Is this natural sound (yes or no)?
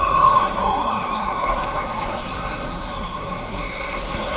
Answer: no